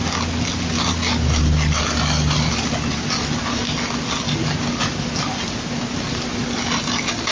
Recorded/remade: recorded